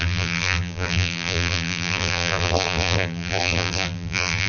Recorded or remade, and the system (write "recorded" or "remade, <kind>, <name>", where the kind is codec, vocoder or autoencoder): remade, vocoder, BigVGAN v2